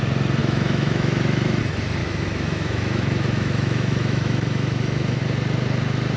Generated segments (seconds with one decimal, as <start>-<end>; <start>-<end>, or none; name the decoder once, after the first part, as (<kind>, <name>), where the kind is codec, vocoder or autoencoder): 0.4-1.6 (autoencoder, DAC-VAE); 2.0-5.2